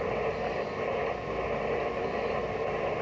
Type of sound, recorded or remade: remade